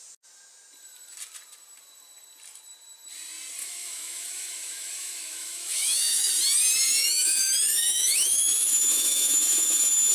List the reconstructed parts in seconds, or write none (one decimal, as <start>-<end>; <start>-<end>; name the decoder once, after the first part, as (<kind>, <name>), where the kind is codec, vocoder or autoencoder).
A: 3.6-6.3 (autoencoder, DAC-VAE); 7.0-10.1